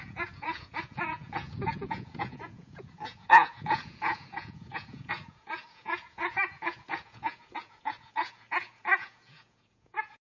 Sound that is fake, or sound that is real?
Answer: fake